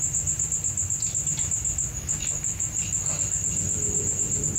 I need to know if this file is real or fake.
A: real